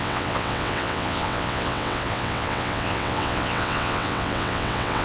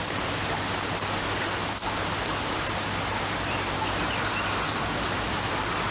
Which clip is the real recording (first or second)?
second